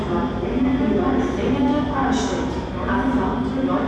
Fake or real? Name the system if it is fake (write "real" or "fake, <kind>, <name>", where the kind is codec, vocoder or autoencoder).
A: real